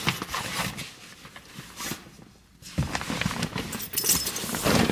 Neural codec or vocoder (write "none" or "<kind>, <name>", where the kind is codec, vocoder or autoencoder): none